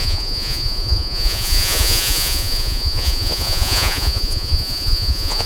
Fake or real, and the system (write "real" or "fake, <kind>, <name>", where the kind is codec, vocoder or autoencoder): fake, vocoder, Vocos